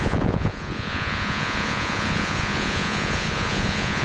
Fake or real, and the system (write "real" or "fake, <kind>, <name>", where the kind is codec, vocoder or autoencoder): fake, vocoder, Vocos